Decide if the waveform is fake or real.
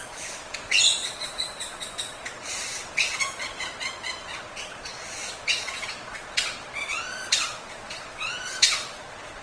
fake